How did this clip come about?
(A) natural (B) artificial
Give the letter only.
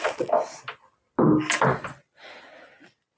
A